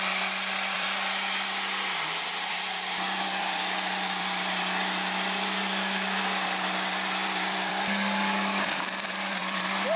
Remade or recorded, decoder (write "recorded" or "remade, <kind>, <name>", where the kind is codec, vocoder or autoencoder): remade, vocoder, BigVGAN v2